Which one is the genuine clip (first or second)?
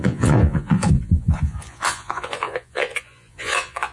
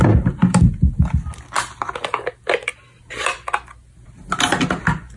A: second